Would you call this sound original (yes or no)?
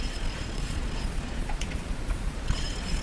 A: no